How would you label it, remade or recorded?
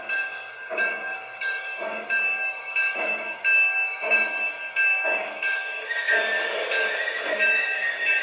remade